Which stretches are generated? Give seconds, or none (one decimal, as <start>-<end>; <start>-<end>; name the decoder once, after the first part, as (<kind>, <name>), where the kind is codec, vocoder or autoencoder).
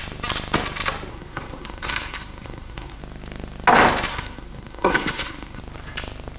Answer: 1.1-3.0 (codec, SNAC); 4.1-5.6